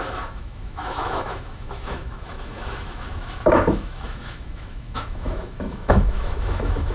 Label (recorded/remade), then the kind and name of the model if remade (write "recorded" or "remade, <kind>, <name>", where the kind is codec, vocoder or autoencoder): remade, autoencoder, DAC-VAE